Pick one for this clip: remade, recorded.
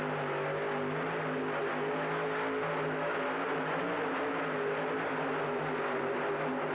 recorded